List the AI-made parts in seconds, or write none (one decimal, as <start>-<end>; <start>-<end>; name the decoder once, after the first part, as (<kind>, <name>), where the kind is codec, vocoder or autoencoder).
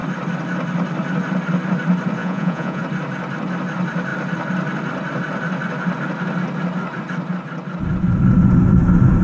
2.2-2.8 (vocoder, Vocos)